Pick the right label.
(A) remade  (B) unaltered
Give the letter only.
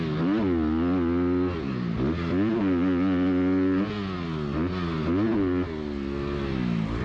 B